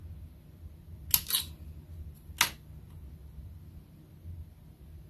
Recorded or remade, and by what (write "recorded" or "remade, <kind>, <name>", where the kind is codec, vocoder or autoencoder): recorded